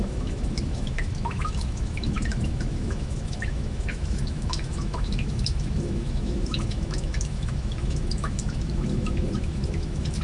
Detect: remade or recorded remade